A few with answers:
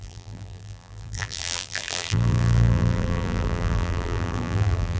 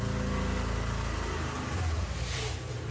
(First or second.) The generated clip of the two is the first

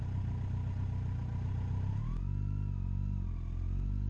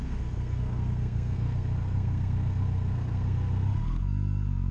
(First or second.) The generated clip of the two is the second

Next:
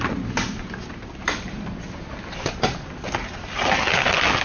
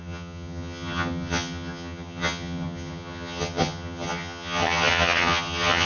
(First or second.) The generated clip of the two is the second